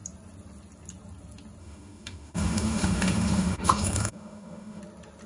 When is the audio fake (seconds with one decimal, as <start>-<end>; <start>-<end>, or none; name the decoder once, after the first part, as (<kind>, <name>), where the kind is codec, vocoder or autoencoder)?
1.6-4.8 (autoencoder, DAC-VAE)